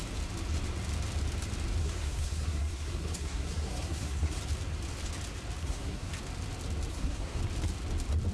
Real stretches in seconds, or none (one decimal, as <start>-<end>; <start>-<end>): 0.0-1.8; 4.4-5.6; 6.1-6.9; 7.4-8.3